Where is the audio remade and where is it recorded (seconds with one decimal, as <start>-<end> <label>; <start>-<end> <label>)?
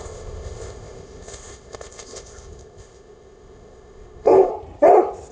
0.0-4.5 remade; 4.5-5.3 recorded